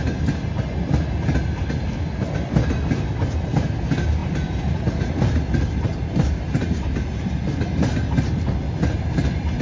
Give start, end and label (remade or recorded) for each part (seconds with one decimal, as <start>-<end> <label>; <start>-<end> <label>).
0.0-9.6 recorded